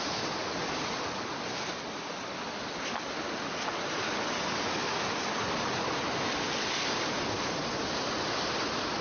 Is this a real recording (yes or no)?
yes